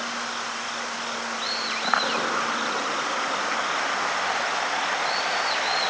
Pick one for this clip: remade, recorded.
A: recorded